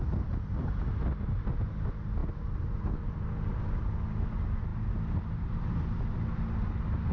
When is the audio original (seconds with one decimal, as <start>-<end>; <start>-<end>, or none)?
0.0-7.1